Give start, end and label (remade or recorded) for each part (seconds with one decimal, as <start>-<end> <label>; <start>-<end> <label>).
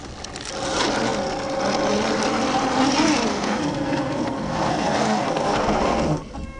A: 0.0-3.3 recorded; 3.3-6.6 remade